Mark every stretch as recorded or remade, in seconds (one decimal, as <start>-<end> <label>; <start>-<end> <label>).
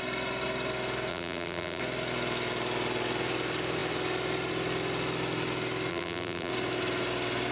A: 0.0-1.1 recorded; 1.1-1.8 remade; 1.8-5.9 recorded; 5.9-6.5 remade; 6.5-7.5 recorded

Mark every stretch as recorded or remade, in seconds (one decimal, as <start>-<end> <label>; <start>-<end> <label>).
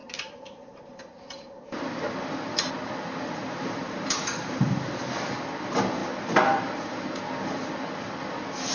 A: 0.0-1.8 remade; 1.8-3.4 recorded; 3.4-5.1 remade; 5.1-6.0 recorded; 6.0-7.2 remade; 7.2-8.7 recorded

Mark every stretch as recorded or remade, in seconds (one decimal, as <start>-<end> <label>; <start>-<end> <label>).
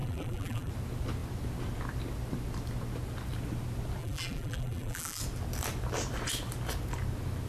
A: 0.0-0.7 remade; 0.7-4.0 recorded; 4.0-5.2 remade; 5.2-7.5 recorded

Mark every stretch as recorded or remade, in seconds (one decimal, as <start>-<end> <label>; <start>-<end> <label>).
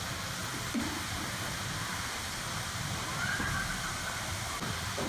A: 0.0-0.4 recorded; 0.4-1.1 remade; 1.1-1.6 recorded; 1.6-5.1 remade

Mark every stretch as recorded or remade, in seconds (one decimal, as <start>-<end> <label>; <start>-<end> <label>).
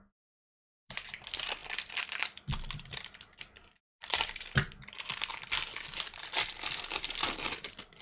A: 0.0-8.0 remade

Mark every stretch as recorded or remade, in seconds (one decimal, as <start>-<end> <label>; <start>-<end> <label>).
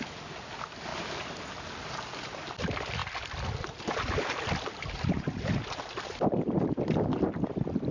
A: 0.0-3.0 recorded; 3.0-7.9 remade